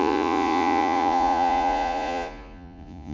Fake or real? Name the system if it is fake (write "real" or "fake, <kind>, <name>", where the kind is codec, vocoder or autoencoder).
fake, vocoder, Vocos